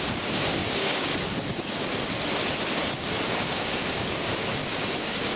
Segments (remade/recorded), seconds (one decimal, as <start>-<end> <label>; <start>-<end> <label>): 0.0-1.1 remade; 1.1-2.9 recorded; 2.9-5.4 remade

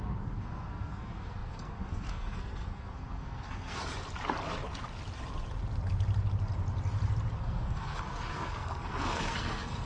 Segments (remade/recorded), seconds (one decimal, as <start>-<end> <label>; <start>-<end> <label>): 0.0-3.8 remade; 3.8-7.4 recorded; 7.4-9.9 remade

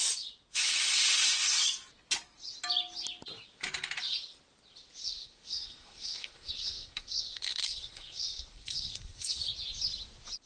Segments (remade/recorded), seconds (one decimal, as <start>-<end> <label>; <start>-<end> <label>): 0.0-5.0 recorded; 5.0-9.4 remade; 9.4-10.5 recorded

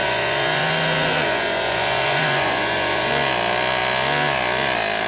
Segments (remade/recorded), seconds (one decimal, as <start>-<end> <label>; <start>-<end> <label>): 0.0-3.1 remade; 3.1-5.1 recorded